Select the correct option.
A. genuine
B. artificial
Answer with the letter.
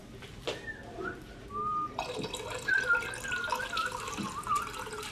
A